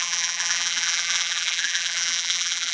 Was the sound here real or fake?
fake